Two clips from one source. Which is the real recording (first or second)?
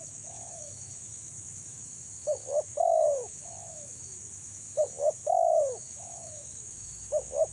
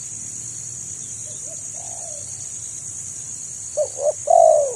second